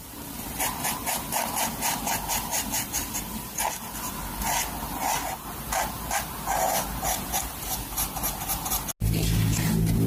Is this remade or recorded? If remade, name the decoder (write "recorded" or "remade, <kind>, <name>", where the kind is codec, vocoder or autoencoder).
recorded